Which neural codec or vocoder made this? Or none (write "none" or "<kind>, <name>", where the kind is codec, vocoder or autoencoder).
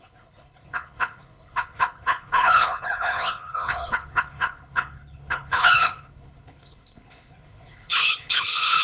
codec, HILCodec